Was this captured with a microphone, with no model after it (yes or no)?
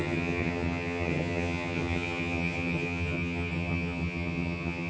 no